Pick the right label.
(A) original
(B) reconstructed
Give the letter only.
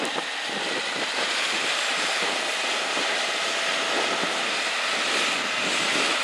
A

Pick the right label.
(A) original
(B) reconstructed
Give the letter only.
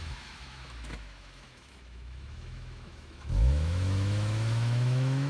B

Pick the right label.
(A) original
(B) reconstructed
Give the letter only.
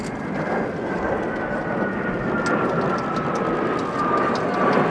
A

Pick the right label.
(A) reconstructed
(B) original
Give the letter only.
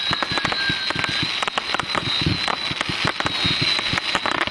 B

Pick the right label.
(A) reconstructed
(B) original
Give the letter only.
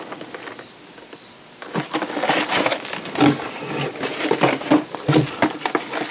A